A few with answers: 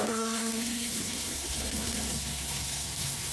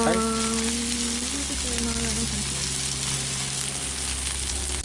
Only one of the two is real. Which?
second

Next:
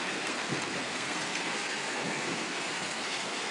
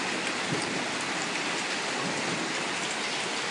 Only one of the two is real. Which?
second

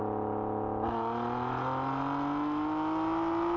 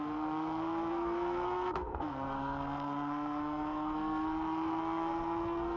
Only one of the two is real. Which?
first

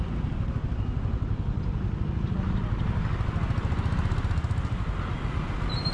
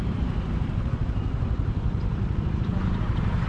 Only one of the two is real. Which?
first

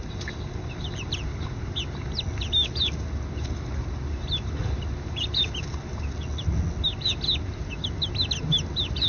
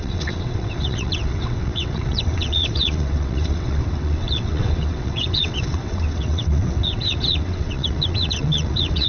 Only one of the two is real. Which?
first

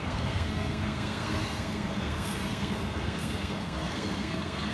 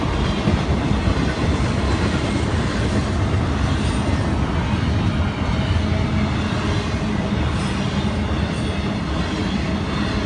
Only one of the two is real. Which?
second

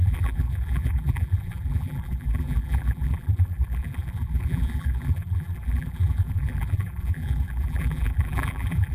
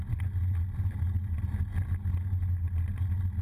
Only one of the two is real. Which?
second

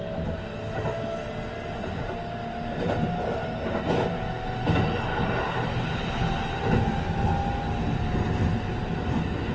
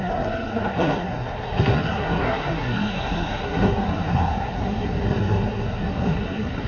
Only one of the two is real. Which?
first